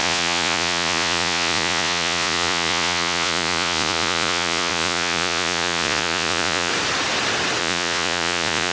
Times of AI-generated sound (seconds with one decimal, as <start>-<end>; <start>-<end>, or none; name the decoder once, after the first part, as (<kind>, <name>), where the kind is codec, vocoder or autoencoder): 0.0-6.7 (vocoder, Vocos); 7.6-8.7